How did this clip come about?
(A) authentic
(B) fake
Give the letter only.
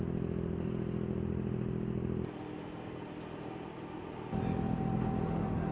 A